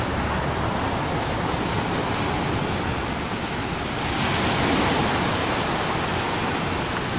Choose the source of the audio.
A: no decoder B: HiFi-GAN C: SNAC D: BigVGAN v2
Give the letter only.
A